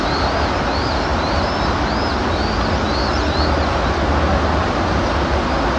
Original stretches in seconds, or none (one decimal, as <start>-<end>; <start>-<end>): 0.0-5.8